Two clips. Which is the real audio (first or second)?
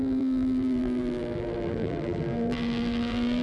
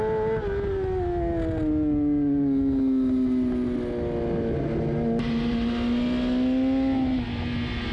second